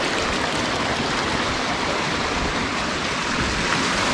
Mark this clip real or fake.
real